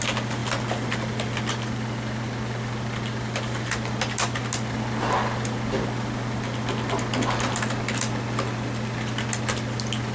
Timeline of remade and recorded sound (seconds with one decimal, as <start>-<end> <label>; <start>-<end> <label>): 0.0-10.1 recorded